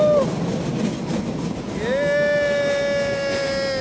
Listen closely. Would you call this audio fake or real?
real